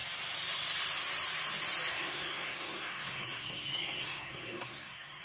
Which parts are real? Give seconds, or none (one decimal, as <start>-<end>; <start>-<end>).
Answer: 0.0-1.9